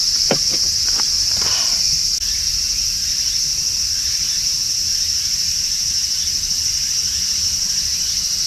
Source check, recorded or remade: recorded